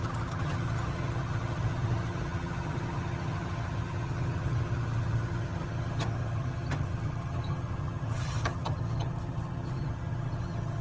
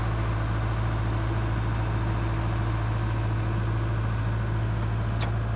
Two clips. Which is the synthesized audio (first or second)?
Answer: first